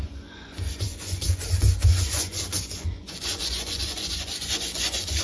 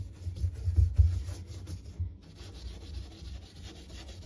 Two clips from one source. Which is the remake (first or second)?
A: first